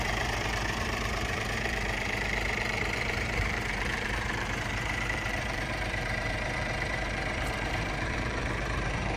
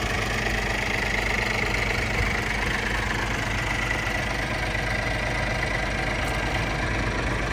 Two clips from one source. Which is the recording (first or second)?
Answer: second